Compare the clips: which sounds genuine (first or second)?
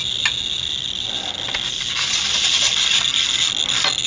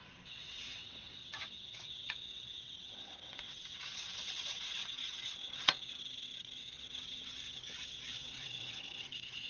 first